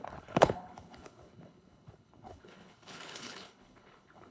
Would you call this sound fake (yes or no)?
yes